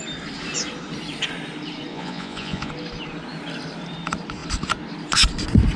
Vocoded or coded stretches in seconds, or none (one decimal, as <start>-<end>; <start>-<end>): 1.9-2.7

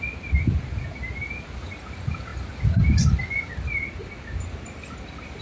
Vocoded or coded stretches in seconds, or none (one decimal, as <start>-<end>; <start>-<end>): none

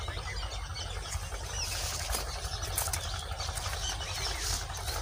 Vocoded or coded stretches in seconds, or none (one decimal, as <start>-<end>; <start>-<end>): none

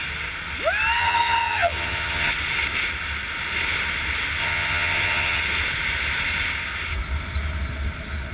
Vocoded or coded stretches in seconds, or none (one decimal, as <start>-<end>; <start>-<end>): 1.0-2.3; 4.4-5.4

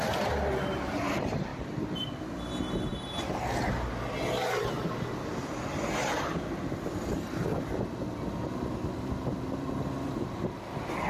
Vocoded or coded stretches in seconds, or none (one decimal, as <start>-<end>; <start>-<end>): none

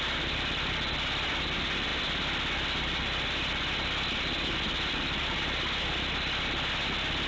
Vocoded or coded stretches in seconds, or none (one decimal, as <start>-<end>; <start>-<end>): none